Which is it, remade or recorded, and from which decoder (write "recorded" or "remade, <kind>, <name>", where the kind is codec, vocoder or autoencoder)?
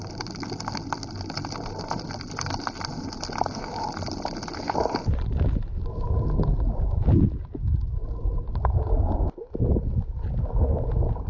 recorded